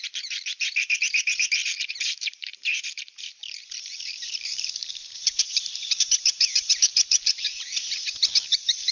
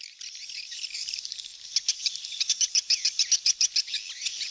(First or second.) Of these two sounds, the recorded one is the second